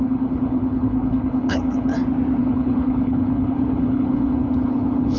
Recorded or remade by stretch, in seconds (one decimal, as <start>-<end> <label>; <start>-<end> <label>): 0.0-1.9 remade; 1.9-2.4 recorded; 2.4-5.2 remade